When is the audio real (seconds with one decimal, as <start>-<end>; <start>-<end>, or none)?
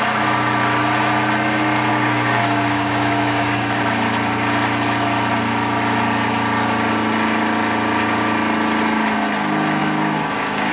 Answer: 0.0-1.9; 3.8-9.8